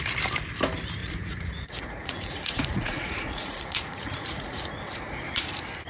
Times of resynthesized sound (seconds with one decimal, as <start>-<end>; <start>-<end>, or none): 1.0-4.5